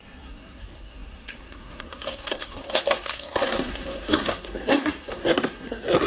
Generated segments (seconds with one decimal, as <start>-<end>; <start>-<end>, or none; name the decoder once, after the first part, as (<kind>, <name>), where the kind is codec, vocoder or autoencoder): 0.0-6.1 (codec, SNAC)